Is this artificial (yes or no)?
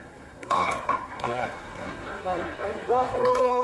yes